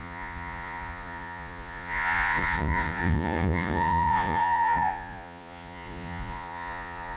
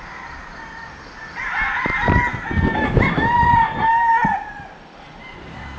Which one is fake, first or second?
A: first